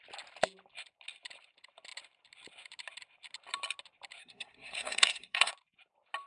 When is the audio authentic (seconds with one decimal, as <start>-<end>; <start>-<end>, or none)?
0.0-4.2; 5.5-6.3